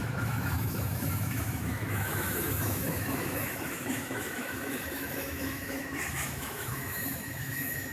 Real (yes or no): no